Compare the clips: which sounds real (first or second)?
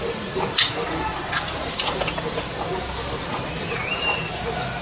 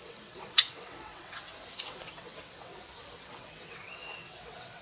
first